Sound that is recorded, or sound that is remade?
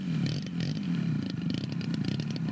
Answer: remade